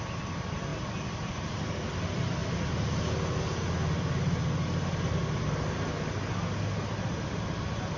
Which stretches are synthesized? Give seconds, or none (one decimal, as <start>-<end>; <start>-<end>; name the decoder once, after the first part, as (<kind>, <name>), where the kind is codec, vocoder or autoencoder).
none